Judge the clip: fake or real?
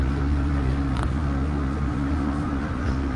fake